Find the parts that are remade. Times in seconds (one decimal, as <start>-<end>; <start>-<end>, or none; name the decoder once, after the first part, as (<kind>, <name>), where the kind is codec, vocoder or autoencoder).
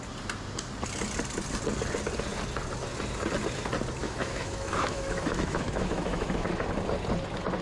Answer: 4.0-6.5 (autoencoder, DAC-VAE)